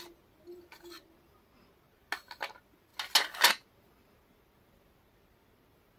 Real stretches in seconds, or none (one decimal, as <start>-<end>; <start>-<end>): 0.0-6.0